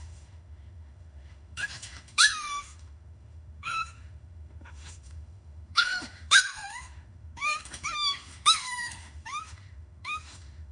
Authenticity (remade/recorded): remade